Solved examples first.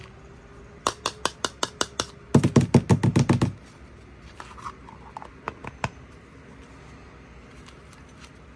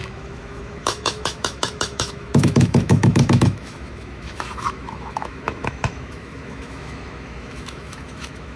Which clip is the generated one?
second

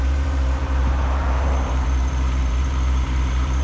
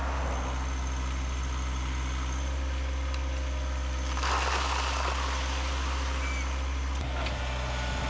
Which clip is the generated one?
first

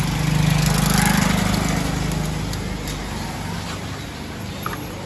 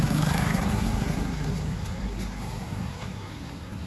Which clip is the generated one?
second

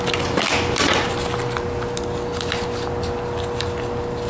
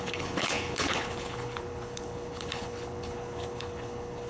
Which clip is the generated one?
second